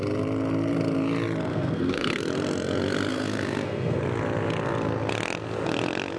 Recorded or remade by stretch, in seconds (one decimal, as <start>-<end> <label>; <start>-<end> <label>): 0.0-1.5 recorded; 1.5-2.2 remade; 2.2-3.1 recorded; 3.1-4.0 remade; 4.0-6.2 recorded